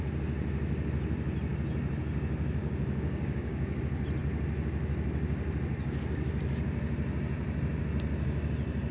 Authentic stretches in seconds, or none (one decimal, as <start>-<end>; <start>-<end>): 0.0-2.6; 3.8-8.9